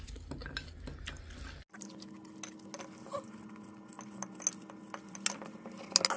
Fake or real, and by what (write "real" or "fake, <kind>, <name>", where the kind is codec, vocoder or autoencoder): real